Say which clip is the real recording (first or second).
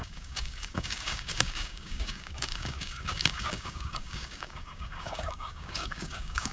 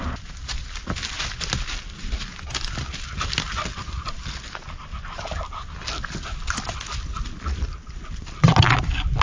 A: second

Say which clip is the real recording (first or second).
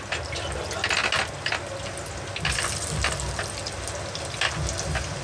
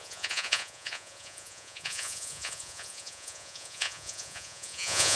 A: first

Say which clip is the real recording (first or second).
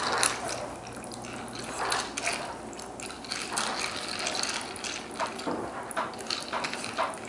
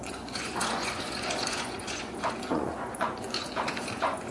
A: first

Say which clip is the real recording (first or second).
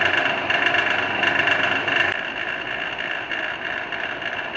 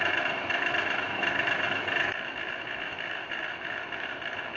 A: first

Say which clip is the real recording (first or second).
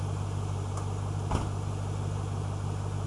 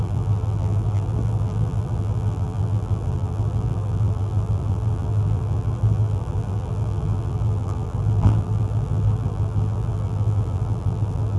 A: first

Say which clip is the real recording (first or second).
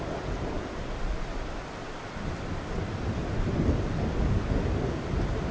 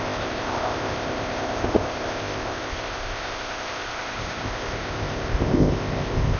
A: first